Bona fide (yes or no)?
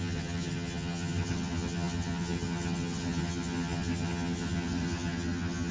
no